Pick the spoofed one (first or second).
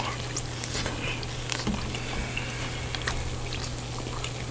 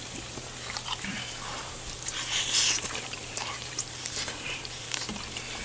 second